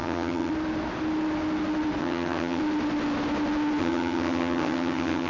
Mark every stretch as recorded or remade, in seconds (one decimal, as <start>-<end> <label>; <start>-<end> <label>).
0.0-0.5 remade; 0.5-2.0 recorded; 2.0-2.6 remade; 2.6-3.8 recorded; 3.8-5.3 remade